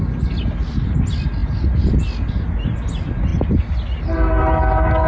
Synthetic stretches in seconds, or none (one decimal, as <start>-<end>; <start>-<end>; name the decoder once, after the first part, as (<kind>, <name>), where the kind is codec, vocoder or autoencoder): none

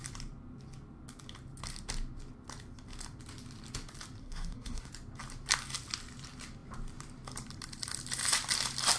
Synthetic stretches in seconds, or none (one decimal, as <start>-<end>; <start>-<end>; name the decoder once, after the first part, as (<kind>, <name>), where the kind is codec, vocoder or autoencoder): 4.2-4.9 (codec, SNAC)

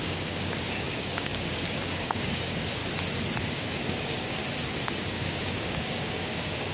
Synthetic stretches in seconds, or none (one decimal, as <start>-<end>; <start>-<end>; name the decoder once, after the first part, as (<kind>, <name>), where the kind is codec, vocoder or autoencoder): 0.0-2.8 (codec, DAC); 3.4-4.4; 5.1-6.7